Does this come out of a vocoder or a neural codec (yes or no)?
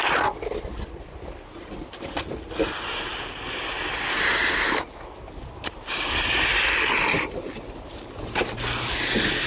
no